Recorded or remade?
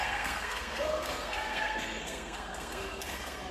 remade